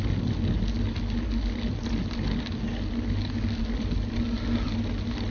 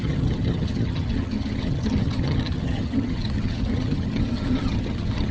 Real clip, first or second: first